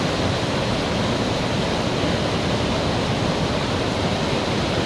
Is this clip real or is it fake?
real